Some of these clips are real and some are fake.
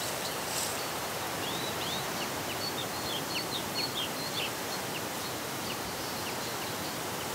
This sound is fake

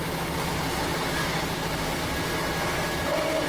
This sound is real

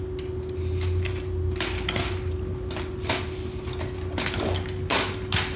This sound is real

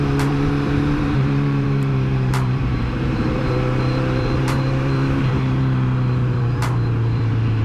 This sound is fake